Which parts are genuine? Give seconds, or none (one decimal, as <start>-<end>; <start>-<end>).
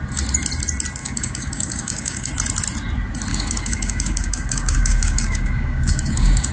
0.0-1.0; 2.3-3.3